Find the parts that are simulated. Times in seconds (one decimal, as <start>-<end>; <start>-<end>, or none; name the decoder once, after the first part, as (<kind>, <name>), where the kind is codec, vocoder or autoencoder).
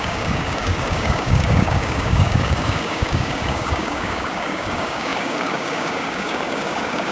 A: 0.0-7.1 (codec, DAC)